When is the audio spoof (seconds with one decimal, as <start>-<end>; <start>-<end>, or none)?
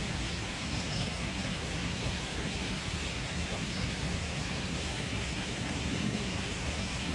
0.0-7.1